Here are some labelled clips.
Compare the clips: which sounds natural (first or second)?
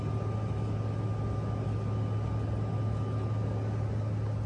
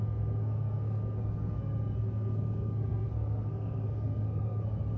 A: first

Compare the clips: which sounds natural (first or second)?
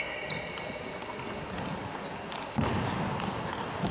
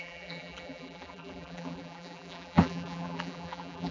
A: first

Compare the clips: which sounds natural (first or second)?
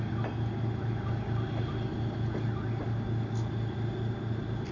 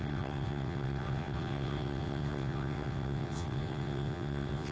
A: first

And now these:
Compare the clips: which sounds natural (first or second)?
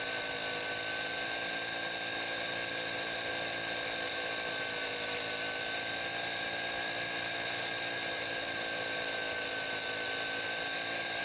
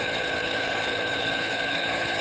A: first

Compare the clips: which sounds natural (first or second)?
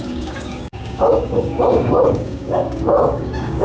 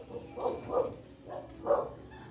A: second